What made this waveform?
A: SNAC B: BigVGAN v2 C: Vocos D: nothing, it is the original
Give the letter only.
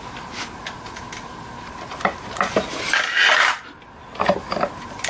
D